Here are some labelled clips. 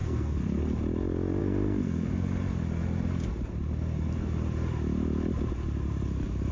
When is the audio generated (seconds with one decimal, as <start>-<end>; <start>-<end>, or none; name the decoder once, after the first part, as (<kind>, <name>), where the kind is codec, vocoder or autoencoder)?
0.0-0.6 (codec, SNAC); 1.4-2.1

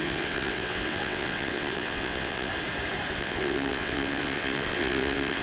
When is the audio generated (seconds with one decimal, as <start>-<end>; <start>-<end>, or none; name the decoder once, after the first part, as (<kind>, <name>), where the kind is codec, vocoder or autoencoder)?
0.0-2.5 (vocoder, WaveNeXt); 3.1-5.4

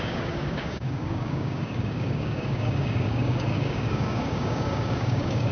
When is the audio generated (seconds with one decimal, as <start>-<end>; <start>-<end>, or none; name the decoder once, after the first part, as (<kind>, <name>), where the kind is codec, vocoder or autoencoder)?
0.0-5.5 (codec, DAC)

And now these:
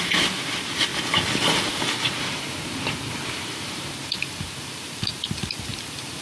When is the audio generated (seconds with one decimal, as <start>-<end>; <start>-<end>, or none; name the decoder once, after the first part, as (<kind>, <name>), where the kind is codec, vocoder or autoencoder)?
0.0-0.9 (vocoder, BigVGAN v2); 2.2-6.2

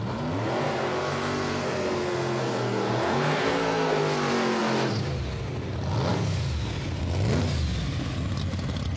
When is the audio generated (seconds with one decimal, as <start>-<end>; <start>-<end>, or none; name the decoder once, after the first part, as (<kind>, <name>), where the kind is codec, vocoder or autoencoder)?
0.6-4.0 (codec, SNAC)

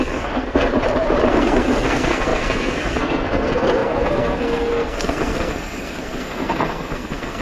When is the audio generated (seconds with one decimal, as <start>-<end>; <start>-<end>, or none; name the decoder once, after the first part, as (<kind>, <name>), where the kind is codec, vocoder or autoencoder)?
0.0-0.7 (codec, SNAC); 1.3-7.4

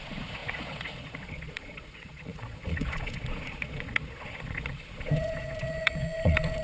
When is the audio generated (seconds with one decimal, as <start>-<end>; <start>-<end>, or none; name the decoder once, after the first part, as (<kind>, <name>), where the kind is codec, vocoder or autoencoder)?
0.0-6.6 (vocoder, Vocos)